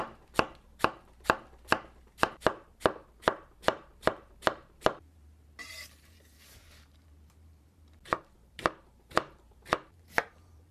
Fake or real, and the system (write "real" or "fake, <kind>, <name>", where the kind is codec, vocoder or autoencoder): fake, vocoder, BigVGAN v2